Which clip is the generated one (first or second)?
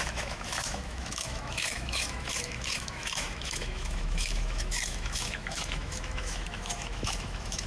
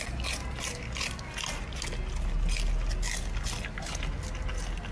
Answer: first